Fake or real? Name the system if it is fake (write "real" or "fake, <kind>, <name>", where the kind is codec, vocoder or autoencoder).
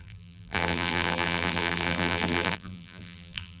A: fake, vocoder, BigVGAN v2